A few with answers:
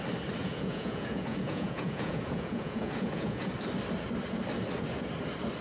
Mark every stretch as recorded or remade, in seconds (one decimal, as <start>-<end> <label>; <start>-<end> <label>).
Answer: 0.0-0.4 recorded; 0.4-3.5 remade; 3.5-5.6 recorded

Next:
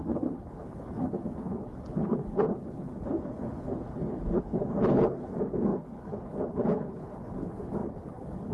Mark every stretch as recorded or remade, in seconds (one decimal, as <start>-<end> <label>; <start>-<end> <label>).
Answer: 0.0-8.5 remade

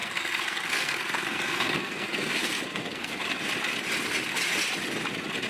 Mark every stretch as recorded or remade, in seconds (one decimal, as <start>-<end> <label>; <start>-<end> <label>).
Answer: 0.0-3.3 remade; 3.3-5.5 recorded

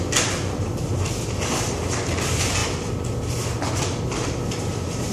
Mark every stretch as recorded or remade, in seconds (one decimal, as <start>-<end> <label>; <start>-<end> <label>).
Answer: 0.0-2.6 remade; 2.6-3.7 recorded; 3.7-5.1 remade

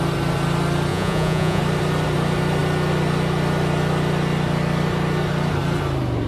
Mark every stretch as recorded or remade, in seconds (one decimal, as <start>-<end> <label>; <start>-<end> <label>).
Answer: 0.0-0.9 recorded; 0.9-1.6 remade; 1.6-6.3 recorded

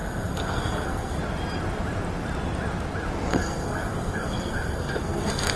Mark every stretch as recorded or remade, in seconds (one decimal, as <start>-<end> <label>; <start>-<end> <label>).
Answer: 0.0-1.2 remade; 1.2-3.3 recorded; 3.3-5.6 remade

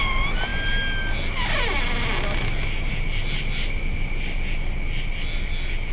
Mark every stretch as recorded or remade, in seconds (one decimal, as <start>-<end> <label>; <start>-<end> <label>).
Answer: 0.0-5.9 recorded